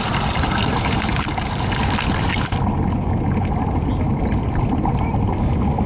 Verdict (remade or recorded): recorded